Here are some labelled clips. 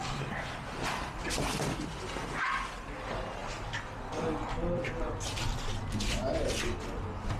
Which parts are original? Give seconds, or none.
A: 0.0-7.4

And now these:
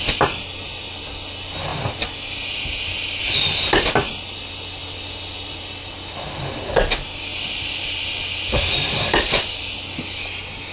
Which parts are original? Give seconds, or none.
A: 0.0-10.7

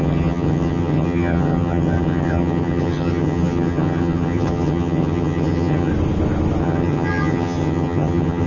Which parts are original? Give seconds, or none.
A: 5.9-6.6

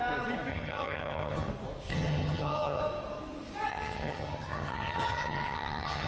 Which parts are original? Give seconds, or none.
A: 0.0-0.5; 1.5-1.9; 2.8-3.7

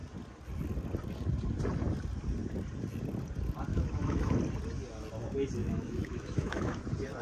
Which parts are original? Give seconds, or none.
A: 0.0-3.7; 4.3-5.6; 6.8-7.2

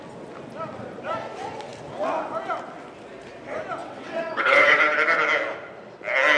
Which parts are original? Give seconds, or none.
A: 0.0-3.8; 4.8-6.4